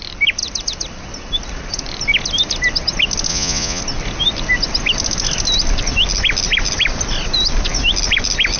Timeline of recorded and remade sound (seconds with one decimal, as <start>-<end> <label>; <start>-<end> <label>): 0.0-3.3 recorded; 3.3-3.8 remade; 3.8-8.6 recorded